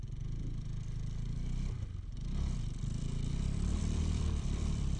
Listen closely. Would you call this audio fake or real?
fake